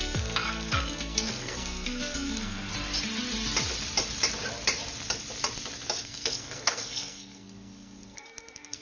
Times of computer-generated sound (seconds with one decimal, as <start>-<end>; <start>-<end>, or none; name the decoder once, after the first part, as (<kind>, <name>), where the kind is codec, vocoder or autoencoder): 0.0-2.7 (codec, SNAC); 6.0-8.8